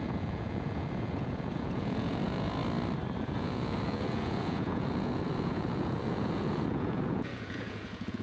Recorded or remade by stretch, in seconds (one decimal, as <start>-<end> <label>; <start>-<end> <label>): 0.0-2.6 remade; 2.6-3.2 recorded; 3.2-8.2 remade